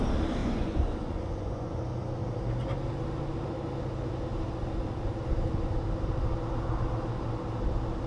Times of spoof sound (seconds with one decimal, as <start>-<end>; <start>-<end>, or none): 0.4-1.8